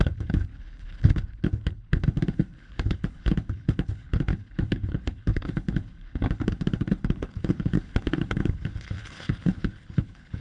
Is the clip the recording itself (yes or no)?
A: no